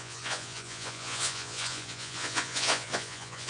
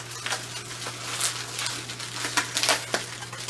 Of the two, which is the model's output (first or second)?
first